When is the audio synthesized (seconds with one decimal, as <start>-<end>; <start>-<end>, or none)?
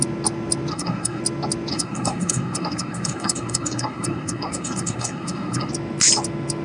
0.7-1.2; 1.7-5.7